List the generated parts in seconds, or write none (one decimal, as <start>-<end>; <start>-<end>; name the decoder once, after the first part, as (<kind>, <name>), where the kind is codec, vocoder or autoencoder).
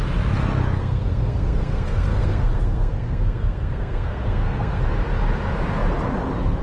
0.8-4.8 (codec, SNAC)